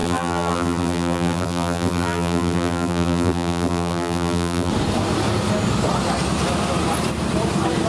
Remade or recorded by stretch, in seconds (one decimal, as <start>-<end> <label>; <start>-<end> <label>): 0.0-4.7 remade; 4.7-7.9 recorded